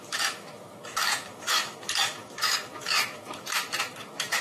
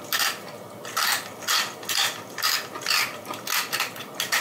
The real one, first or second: second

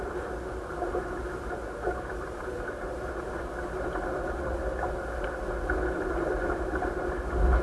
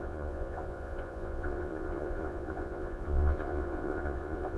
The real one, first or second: first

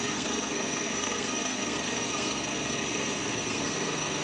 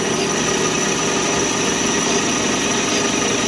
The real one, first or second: second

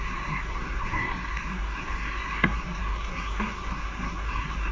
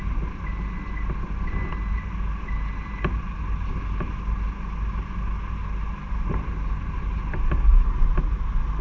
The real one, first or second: second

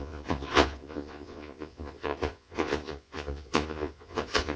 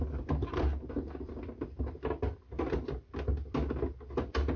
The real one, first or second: second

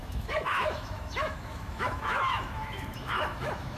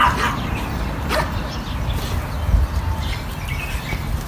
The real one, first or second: second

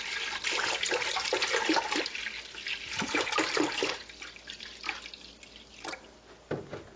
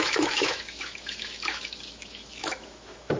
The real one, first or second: first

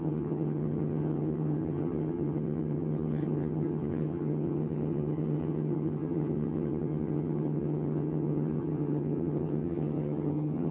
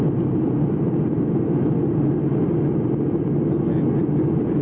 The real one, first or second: second